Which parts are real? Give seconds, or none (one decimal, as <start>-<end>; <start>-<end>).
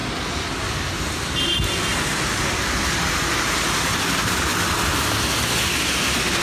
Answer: 0.0-6.4